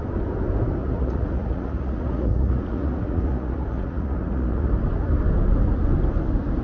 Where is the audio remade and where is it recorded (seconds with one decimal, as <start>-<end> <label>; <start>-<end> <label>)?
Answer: 0.0-0.8 recorded; 0.8-4.7 remade; 4.7-6.6 recorded